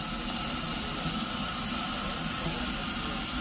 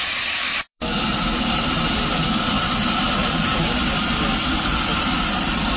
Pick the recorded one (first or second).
first